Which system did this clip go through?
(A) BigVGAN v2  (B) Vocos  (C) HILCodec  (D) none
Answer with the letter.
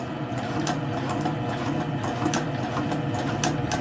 D